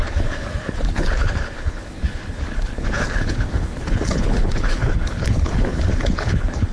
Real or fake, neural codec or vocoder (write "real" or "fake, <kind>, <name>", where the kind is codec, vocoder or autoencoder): fake, codec, HILCodec